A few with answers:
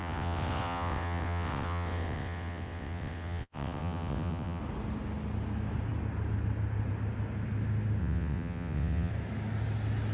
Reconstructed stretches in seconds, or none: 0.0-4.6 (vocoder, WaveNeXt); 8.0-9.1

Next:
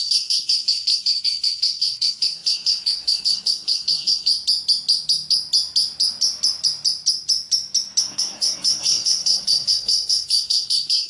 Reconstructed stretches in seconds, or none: 0.0-4.3 (codec, SNAC); 8.0-11.1

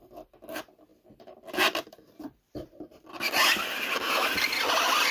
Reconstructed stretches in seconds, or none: 0.9-4.0 (vocoder, BigVGAN v2)